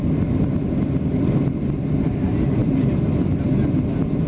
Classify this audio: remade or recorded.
recorded